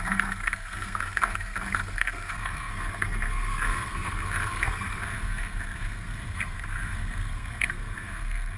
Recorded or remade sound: remade